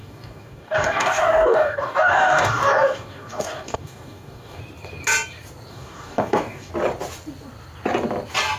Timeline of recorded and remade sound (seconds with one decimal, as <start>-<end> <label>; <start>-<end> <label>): 0.0-4.6 remade; 4.6-5.7 recorded; 5.7-6.7 remade; 6.7-8.6 recorded